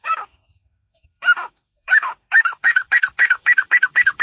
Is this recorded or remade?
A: remade